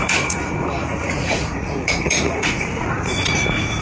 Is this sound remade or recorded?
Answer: remade